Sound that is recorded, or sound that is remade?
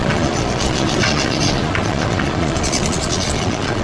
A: remade